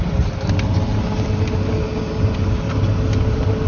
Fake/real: real